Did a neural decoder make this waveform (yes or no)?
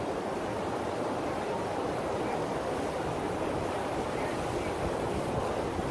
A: no